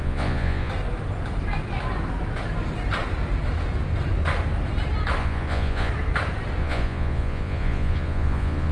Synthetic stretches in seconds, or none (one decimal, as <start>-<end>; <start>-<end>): 0.0-0.7; 5.2-5.9; 6.6-8.7